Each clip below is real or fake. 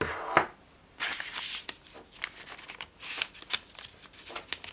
real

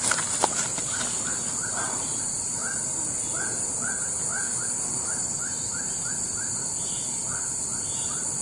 real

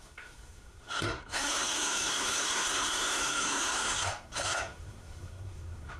fake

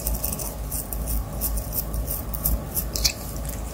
real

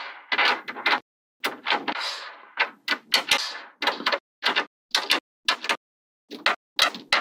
real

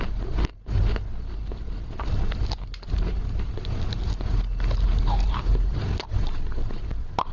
real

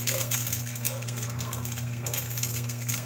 fake